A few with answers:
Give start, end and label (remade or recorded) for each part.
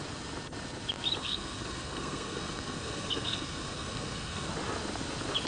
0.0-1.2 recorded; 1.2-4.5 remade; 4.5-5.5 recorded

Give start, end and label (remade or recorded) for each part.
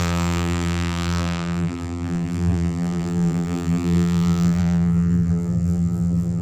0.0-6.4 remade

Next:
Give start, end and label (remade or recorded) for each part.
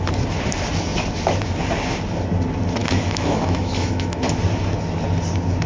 0.0-2.8 recorded; 2.8-4.2 remade; 4.2-5.7 recorded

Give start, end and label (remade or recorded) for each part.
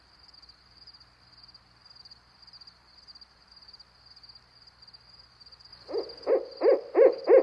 0.0-7.4 recorded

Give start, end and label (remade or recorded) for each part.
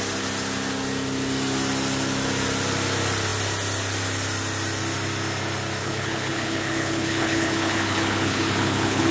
0.0-5.8 recorded; 5.8-9.1 remade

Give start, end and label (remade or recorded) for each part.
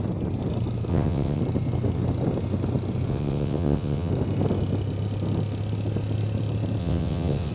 0.0-0.9 recorded; 0.9-1.4 remade; 1.4-3.1 recorded; 3.1-4.1 remade; 4.1-6.8 recorded; 6.8-7.5 remade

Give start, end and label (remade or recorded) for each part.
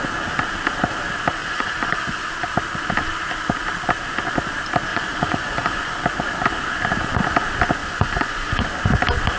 0.0-1.4 recorded; 1.4-2.3 remade; 2.3-4.9 recorded; 4.9-5.9 remade; 5.9-7.8 recorded; 7.8-8.7 remade; 8.7-9.4 recorded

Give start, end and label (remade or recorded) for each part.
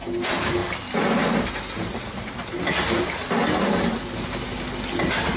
0.0-5.4 recorded